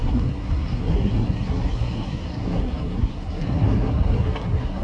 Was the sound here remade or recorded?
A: remade